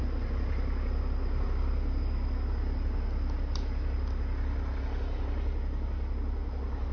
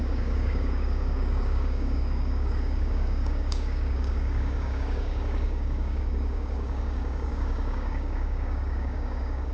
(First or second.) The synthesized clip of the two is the second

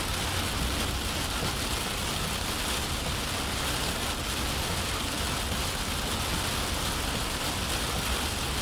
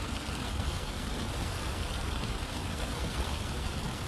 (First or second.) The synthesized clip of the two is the second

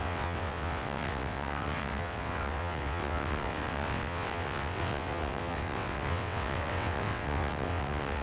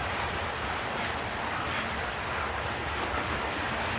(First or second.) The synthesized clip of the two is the first